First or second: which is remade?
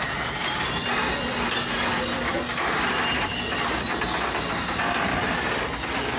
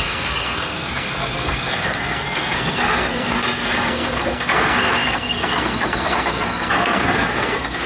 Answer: second